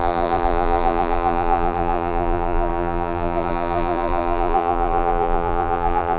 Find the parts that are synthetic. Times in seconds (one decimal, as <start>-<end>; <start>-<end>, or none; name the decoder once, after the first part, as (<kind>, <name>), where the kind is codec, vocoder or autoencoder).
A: 0.0-6.2 (vocoder, BigVGAN v2)